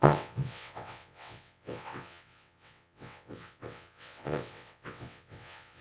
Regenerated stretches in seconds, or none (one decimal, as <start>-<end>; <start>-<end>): 0.0-5.8